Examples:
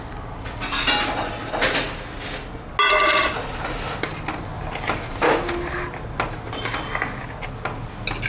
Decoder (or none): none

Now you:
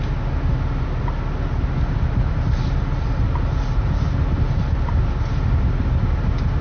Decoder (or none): none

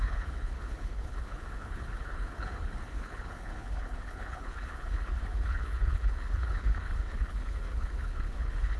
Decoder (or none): codec, HILCodec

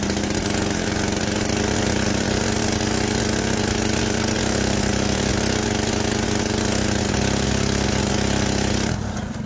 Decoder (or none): none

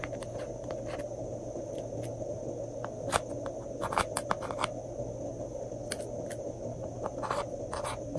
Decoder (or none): none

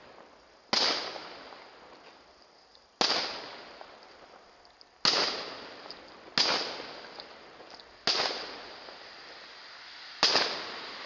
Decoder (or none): none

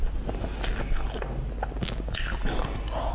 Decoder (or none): none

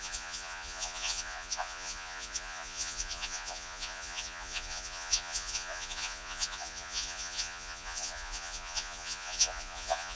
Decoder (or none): vocoder, Vocos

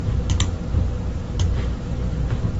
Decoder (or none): none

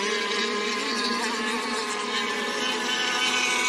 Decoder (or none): none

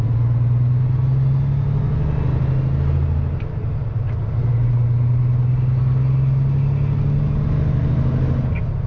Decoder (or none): none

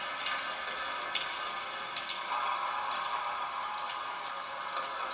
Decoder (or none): none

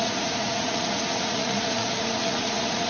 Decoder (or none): vocoder, Vocos